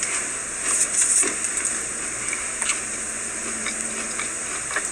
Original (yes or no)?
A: yes